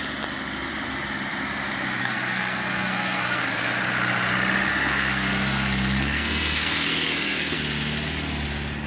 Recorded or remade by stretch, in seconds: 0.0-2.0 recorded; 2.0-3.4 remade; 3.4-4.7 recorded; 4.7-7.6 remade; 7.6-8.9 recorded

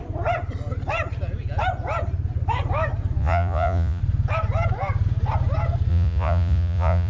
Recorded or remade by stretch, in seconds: 0.0-3.2 recorded; 3.2-4.0 remade; 4.0-5.9 recorded; 5.9-7.1 remade

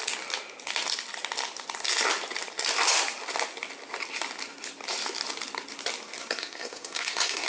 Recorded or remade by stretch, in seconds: 0.0-6.2 recorded; 6.2-7.5 remade

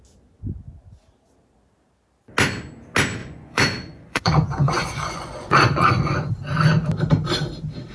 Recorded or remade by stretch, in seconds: 0.0-3.2 recorded; 3.2-6.3 remade; 6.3-7.9 recorded

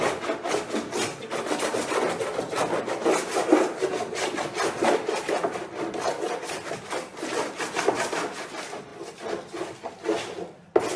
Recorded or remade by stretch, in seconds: 0.0-11.0 recorded

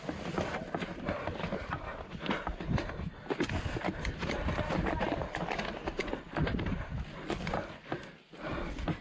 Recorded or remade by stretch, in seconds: 0.0-9.0 recorded

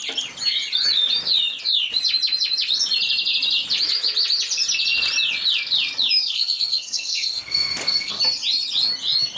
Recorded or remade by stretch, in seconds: 0.0-6.2 recorded; 6.2-8.2 remade; 8.2-9.4 recorded

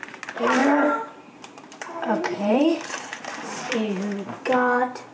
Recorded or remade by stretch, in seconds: 0.0-0.6 recorded; 0.6-3.7 remade; 3.7-5.1 recorded